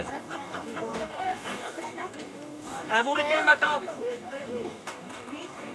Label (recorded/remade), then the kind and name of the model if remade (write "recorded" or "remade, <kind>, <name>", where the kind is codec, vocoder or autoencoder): remade, codec, DAC